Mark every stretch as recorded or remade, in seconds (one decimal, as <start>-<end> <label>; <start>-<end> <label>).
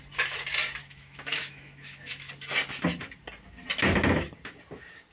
0.0-0.8 recorded; 0.8-2.3 remade; 2.3-5.1 recorded